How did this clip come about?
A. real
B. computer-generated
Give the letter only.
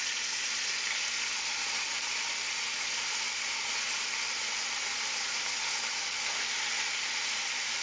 A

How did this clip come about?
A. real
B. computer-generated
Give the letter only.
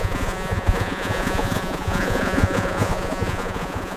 B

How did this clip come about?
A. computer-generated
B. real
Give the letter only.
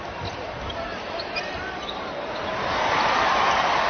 B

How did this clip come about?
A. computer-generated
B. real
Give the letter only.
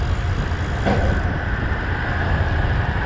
B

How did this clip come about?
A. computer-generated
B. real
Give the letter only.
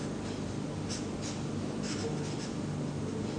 B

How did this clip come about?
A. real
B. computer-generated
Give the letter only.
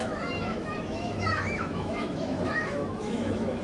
B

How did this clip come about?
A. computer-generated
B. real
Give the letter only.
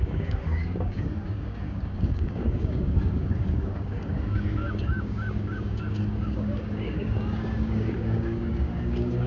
A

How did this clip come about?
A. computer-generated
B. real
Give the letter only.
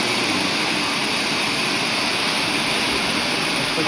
B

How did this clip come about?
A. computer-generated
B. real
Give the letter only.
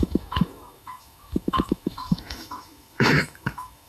A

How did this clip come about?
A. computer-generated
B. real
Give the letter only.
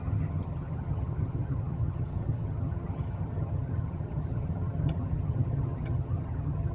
A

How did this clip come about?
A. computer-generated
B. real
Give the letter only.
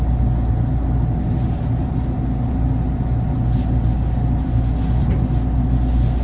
B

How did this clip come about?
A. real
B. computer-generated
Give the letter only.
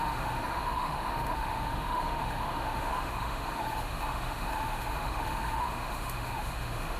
B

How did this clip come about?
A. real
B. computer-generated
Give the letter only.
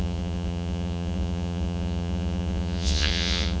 B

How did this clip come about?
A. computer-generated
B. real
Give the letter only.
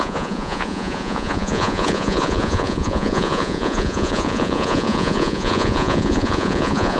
A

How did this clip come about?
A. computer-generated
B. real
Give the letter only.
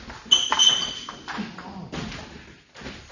B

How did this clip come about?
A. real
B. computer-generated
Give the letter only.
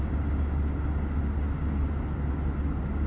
A